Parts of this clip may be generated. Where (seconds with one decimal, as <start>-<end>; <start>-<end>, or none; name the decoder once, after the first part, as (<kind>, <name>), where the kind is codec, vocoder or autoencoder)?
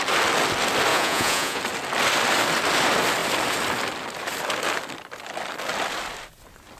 0.9-1.6 (vocoder, Vocos)